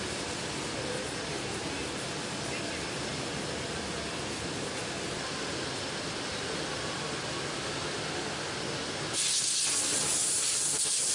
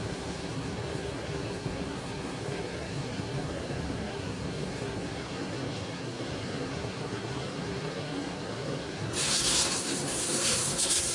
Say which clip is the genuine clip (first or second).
first